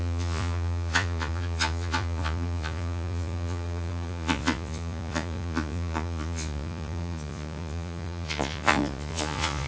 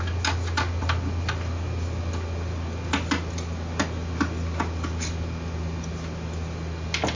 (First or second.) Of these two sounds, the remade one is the first